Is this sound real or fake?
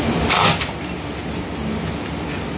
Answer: real